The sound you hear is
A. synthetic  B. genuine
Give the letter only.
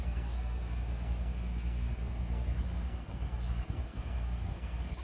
A